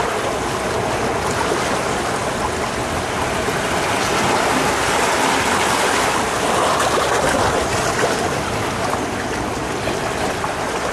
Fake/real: real